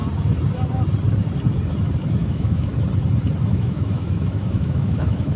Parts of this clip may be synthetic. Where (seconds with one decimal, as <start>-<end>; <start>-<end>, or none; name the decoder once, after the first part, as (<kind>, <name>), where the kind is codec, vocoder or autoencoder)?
2.2-2.7 (autoencoder, DAC-VAE); 3.5-5.4